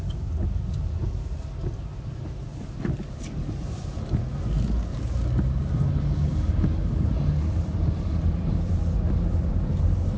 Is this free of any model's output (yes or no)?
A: yes